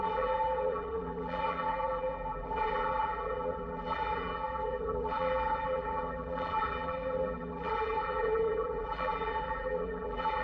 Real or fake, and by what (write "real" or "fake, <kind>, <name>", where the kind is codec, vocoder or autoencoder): fake, vocoder, BigVGAN v2